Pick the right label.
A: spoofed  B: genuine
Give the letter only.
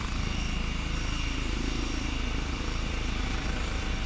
A